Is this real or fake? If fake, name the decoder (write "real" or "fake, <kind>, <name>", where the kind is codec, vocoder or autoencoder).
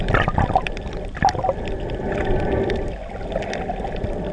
real